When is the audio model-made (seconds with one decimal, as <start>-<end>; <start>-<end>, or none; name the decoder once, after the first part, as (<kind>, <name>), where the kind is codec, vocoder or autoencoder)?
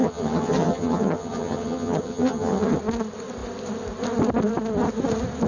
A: 0.0-2.8 (vocoder, HiFi-GAN)